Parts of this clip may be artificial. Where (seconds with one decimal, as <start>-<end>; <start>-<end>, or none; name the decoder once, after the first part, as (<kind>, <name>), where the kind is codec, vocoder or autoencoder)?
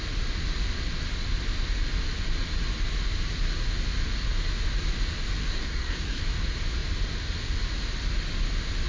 5.4-6.2 (codec, SNAC)